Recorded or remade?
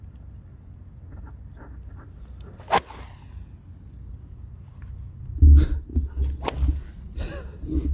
recorded